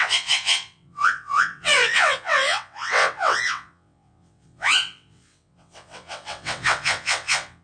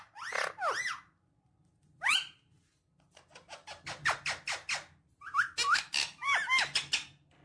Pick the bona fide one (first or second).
second